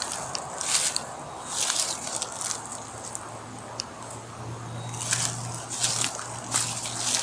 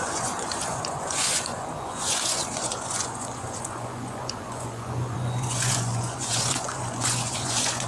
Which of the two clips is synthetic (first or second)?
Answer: second